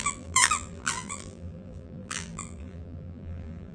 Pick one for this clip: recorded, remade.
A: remade